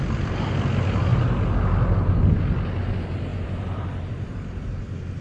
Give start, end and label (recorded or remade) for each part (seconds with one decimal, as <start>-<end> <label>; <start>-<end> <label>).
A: 0.0-1.1 recorded; 1.1-1.9 remade; 1.9-5.2 recorded

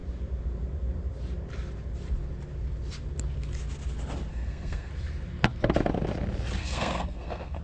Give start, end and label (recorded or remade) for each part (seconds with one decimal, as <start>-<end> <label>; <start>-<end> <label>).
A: 0.0-4.3 recorded; 4.3-4.9 remade; 4.9-6.6 recorded; 6.6-7.6 remade